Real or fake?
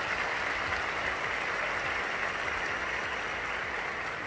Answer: real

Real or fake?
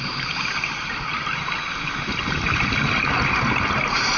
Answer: real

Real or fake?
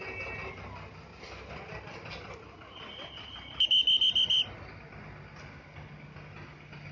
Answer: real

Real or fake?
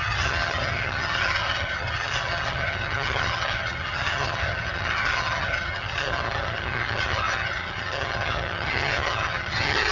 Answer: fake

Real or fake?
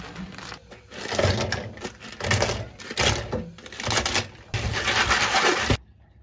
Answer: real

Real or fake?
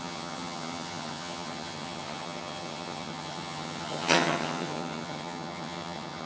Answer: fake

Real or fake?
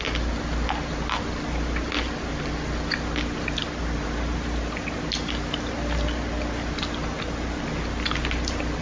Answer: real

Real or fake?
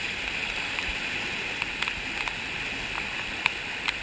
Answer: real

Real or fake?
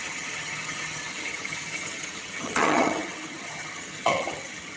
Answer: fake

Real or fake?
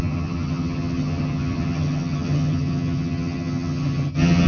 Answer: fake